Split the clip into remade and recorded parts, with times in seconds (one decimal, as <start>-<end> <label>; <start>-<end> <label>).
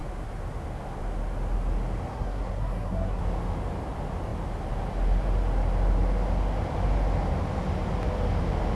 0.0-2.1 recorded; 2.1-3.2 remade; 3.2-8.7 recorded